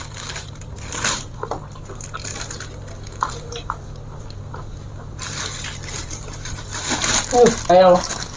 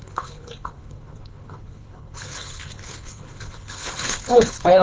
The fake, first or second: second